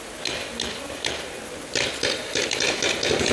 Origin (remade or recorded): recorded